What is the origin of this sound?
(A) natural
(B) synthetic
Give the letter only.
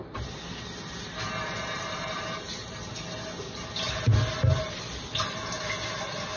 A